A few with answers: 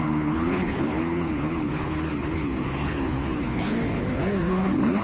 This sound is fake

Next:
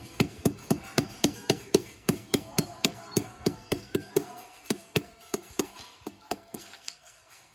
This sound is fake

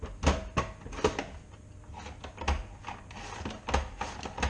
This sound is real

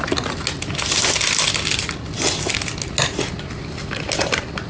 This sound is real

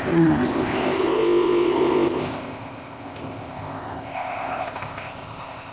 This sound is fake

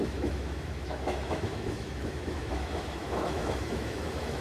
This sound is fake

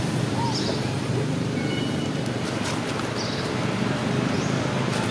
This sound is real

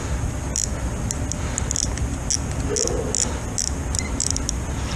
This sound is real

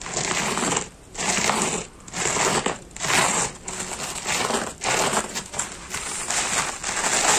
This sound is real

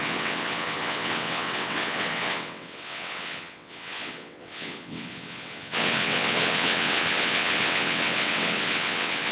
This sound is fake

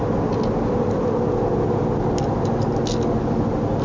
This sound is real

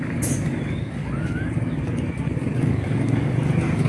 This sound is fake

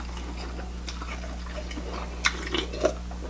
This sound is real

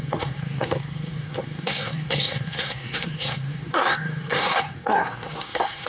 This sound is fake